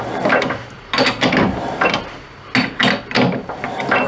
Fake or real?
real